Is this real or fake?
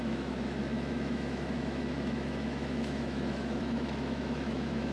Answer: fake